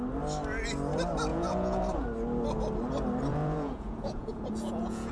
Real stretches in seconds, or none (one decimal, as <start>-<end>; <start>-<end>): 0.0-1.3; 1.8-3.3